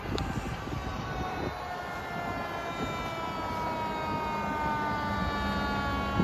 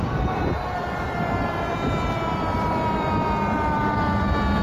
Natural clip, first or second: first